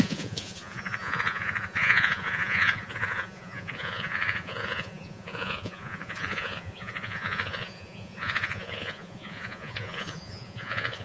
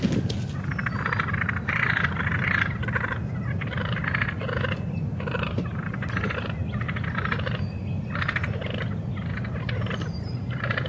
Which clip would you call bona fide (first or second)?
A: second